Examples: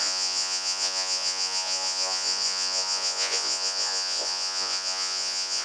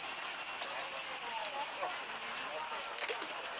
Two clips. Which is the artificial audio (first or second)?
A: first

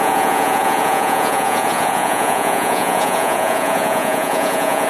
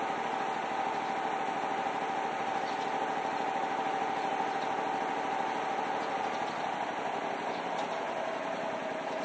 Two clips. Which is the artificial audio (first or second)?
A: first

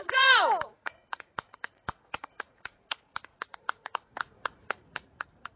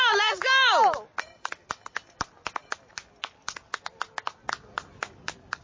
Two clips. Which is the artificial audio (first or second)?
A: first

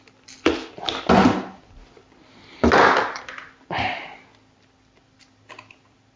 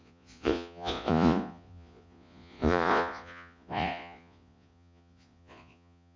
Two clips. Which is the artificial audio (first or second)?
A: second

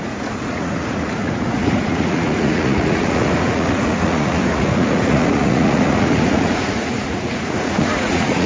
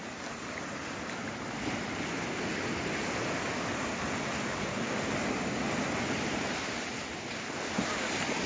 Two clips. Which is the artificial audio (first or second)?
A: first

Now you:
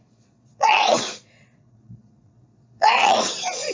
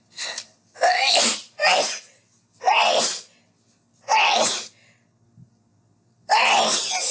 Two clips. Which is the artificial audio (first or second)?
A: first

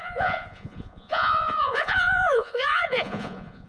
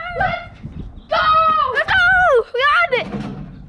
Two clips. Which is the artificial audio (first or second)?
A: first